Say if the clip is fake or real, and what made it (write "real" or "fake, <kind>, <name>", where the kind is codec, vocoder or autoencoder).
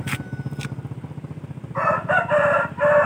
real